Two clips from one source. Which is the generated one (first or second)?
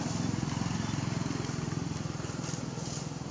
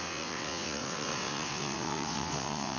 second